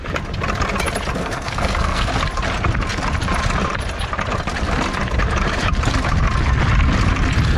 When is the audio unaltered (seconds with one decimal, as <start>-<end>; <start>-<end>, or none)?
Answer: 0.0-1.2; 2.1-7.6